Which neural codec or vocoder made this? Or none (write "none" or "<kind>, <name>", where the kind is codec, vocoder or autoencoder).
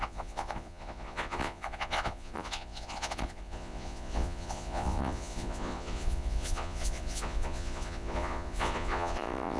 vocoder, Vocos